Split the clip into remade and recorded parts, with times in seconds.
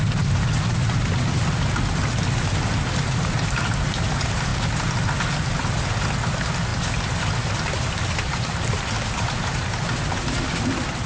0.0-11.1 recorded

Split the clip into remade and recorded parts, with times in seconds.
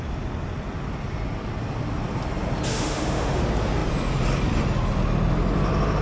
0.0-2.7 recorded; 2.7-3.4 remade; 3.4-6.0 recorded